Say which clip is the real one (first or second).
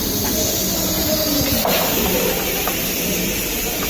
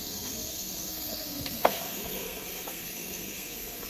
first